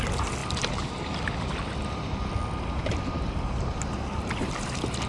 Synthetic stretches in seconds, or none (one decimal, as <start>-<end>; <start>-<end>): none